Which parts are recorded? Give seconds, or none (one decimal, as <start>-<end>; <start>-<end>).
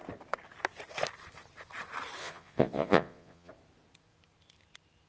0.0-2.2; 3.5-5.1